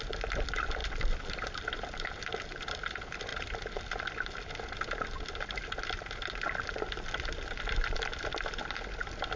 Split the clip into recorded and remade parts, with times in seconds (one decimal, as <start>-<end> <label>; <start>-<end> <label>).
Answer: 0.0-3.3 remade; 3.3-7.6 recorded; 7.6-9.4 remade